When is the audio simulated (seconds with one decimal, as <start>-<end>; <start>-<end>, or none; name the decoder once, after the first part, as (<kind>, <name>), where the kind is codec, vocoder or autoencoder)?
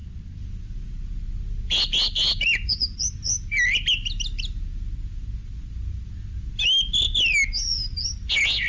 none